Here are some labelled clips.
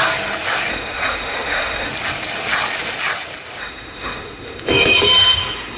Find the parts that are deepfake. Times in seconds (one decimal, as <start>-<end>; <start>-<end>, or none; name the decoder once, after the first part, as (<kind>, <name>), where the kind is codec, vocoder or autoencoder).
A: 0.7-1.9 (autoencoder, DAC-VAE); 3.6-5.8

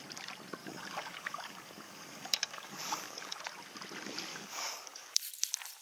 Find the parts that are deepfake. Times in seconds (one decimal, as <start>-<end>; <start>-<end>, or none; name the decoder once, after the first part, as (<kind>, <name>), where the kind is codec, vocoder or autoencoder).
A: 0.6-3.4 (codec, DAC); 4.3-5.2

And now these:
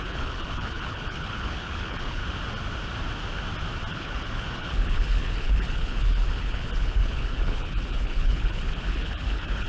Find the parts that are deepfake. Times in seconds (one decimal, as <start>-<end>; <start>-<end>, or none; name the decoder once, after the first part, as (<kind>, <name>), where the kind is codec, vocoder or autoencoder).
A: 0.0-2.2 (codec, HILCodec); 3.9-9.7

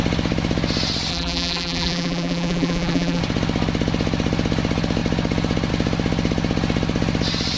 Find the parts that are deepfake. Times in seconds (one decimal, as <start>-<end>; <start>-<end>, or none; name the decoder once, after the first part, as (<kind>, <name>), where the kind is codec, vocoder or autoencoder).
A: 1.1-3.2 (vocoder, BigVGAN v2)